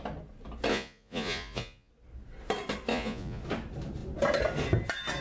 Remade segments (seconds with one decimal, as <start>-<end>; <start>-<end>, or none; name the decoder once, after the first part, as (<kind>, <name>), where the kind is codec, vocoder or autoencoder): 0.7-1.9 (vocoder, Vocos); 2.9-3.4